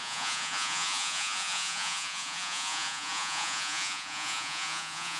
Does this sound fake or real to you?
fake